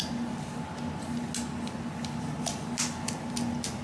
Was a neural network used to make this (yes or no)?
no